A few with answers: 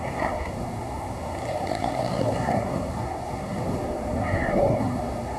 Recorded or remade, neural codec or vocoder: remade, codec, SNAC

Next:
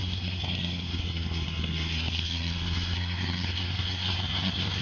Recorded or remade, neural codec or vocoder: remade, codec, SNAC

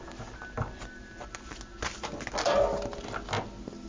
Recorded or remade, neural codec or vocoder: recorded